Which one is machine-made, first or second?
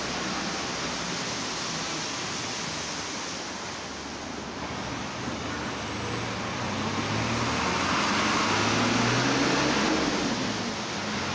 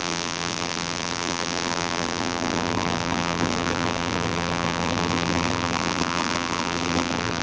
second